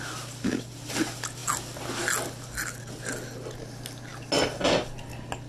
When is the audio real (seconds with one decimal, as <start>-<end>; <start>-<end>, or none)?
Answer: 0.0-5.5